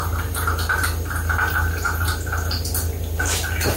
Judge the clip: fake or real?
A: real